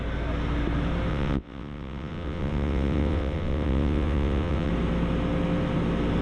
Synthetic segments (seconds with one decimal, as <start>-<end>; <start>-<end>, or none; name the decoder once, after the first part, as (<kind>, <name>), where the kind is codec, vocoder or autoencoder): 1.1-4.7 (vocoder, WaveNeXt)